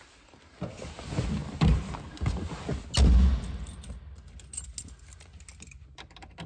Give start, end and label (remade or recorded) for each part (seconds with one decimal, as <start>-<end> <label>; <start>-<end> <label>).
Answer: 0.0-6.5 recorded